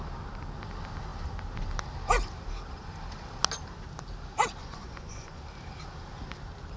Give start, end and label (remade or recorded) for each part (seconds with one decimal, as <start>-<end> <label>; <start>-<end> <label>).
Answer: 0.0-4.6 recorded; 4.6-5.4 remade; 5.4-6.8 recorded